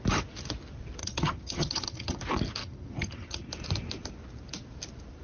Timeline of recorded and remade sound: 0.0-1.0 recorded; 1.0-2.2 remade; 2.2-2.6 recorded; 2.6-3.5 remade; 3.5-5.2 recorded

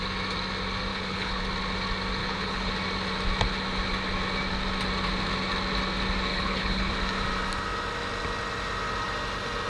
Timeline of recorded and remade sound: 0.0-0.9 recorded; 0.9-1.4 remade; 1.4-2.2 recorded; 2.2-2.7 remade; 2.7-6.3 recorded; 6.3-6.9 remade; 6.9-9.7 recorded

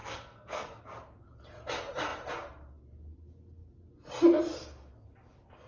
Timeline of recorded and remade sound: 0.0-0.8 remade; 0.8-5.7 recorded

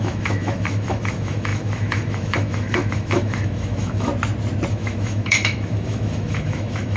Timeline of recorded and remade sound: 0.0-4.1 remade; 4.1-4.7 recorded; 4.7-7.0 remade

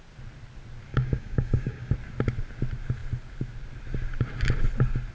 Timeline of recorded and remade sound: 0.0-0.9 recorded; 0.9-1.9 remade; 1.9-5.1 recorded

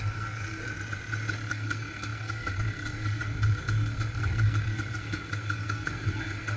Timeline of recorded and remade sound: 0.0-0.6 remade; 0.6-1.5 recorded; 1.5-6.6 remade

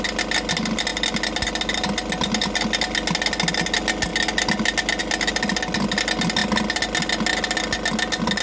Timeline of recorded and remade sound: 0.0-8.4 recorded

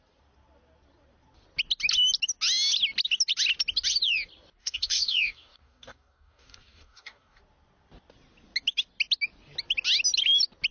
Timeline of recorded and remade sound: 0.0-4.6 recorded; 4.6-7.4 remade; 7.4-10.7 recorded